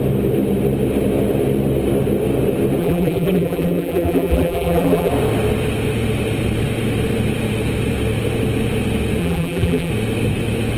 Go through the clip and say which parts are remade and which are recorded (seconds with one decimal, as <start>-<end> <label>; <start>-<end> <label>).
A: 0.0-2.8 recorded; 2.8-5.1 remade; 5.1-9.2 recorded; 9.2-9.9 remade; 9.9-10.8 recorded